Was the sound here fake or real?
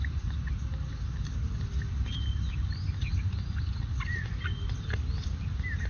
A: real